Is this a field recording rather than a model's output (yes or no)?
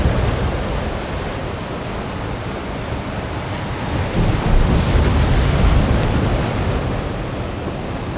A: yes